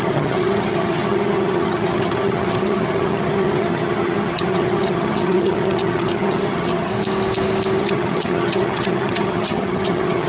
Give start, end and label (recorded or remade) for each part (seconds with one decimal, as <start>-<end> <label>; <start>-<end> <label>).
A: 0.0-6.9 remade; 6.9-7.8 recorded; 7.8-10.3 remade